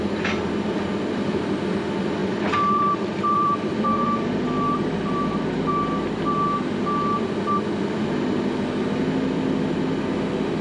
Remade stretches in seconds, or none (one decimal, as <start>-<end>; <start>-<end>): 2.2-5.7